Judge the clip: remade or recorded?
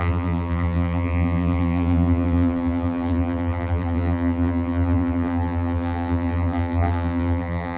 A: remade